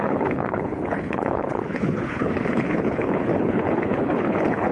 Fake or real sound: fake